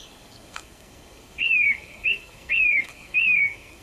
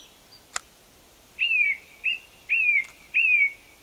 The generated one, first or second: first